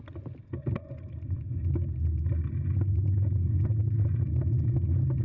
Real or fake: real